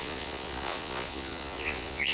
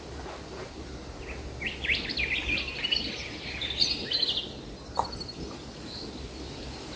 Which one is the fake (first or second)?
first